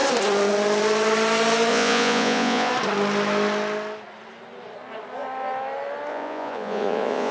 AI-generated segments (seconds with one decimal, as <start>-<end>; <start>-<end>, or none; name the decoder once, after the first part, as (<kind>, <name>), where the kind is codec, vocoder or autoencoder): 1.7-2.7 (vocoder, Vocos); 6.1-7.3